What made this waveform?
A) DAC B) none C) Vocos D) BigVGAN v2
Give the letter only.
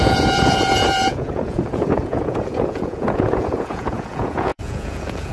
C